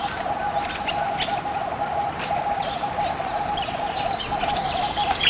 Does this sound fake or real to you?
real